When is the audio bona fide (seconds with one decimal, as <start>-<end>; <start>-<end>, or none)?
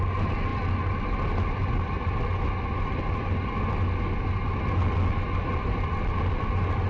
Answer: 0.0-6.9